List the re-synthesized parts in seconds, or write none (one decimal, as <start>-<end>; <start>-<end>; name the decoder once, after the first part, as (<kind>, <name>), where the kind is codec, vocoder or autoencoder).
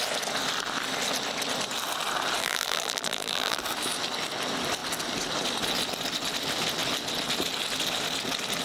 2.4-3.6 (vocoder, BigVGAN v2)